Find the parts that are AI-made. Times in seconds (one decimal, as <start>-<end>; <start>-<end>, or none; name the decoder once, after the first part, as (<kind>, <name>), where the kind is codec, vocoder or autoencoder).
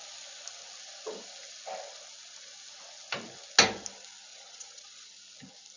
4.3-5.1 (vocoder, Vocos)